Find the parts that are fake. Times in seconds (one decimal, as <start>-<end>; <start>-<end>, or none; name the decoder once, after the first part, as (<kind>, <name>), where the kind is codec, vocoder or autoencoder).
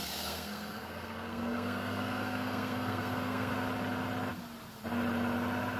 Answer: 0.0-3.5 (codec, SNAC)